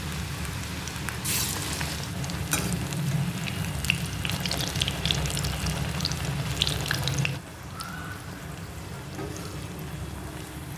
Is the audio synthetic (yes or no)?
no